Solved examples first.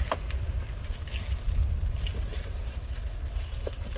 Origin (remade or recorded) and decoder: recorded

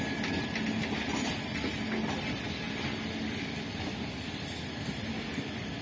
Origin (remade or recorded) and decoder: recorded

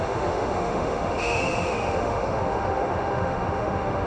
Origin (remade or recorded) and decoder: remade, autoencoder, DAC-VAE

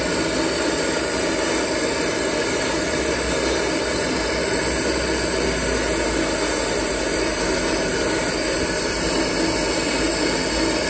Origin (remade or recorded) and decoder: recorded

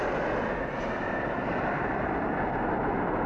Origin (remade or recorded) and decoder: recorded